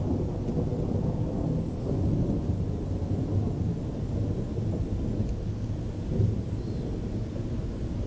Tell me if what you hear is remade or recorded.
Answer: recorded